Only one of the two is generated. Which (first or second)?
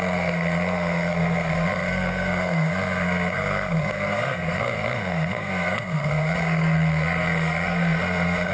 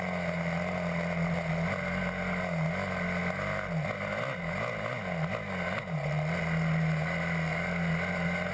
first